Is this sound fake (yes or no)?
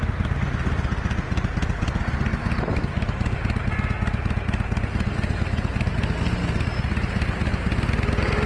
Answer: no